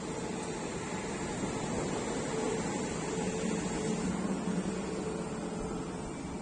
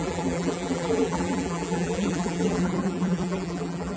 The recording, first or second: first